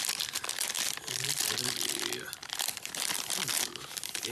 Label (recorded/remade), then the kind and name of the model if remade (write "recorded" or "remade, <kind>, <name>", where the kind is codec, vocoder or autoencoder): remade, vocoder, BigVGAN v2